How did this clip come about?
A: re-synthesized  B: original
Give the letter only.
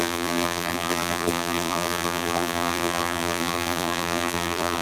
A